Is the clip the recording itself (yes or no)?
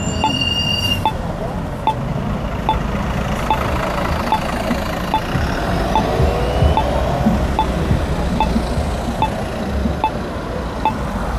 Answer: yes